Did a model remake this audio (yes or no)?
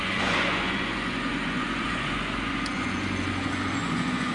yes